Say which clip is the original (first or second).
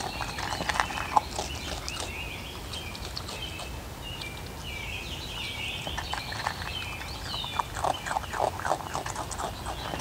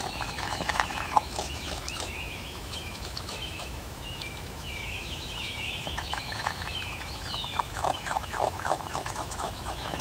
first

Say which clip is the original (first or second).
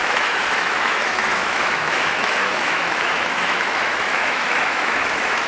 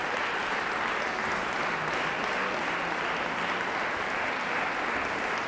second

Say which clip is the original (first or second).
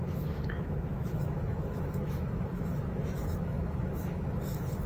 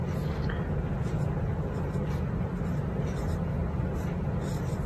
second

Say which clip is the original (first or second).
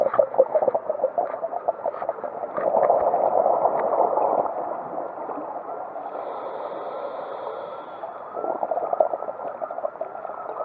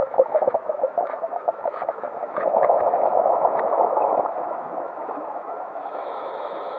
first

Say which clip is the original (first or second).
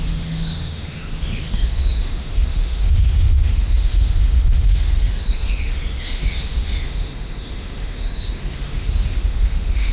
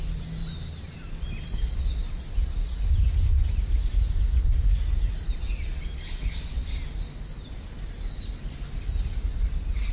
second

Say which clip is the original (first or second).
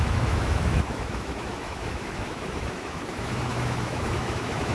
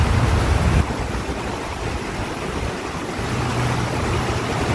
second